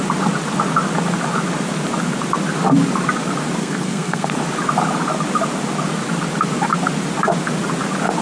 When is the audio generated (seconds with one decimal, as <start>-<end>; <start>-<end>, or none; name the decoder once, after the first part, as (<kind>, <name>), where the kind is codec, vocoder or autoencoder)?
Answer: 3.6-4.3 (codec, SNAC)